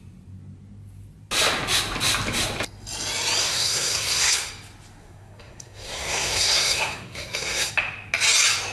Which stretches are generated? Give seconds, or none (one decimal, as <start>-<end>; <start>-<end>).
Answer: 3.4-4.5; 5.0-7.7